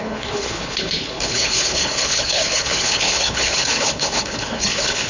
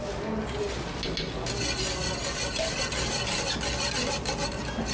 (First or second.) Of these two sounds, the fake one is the first